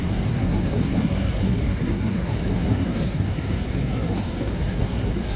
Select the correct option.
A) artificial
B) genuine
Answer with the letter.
A